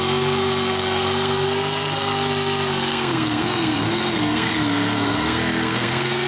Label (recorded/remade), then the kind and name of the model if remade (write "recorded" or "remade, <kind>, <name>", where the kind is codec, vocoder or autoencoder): remade, codec, SNAC